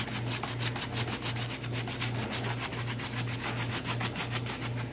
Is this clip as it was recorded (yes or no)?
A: yes